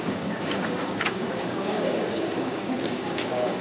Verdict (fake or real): fake